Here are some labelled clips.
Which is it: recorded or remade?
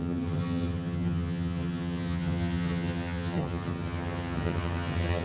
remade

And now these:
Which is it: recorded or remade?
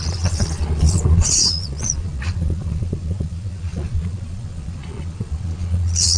remade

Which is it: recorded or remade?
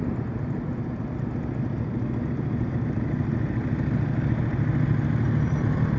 recorded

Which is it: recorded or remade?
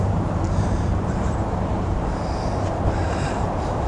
remade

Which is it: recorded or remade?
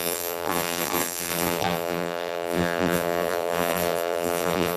remade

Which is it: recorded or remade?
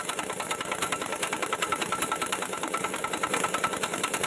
remade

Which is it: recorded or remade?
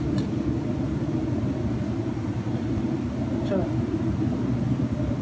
recorded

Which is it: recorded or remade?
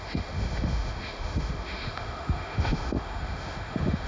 remade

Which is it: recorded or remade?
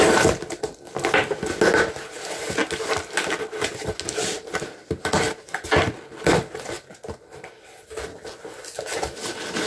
recorded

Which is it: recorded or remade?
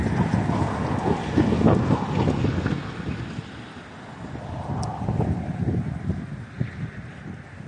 recorded